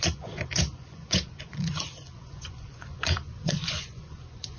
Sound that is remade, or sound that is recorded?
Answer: remade